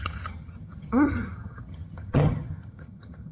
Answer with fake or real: fake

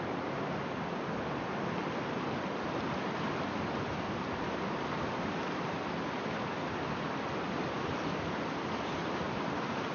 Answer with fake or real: real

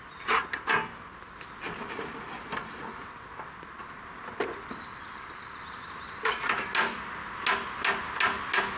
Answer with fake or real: real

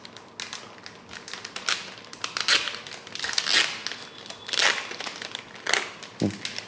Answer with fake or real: real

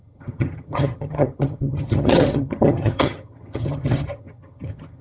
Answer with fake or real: fake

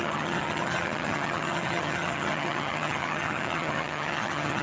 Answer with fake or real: fake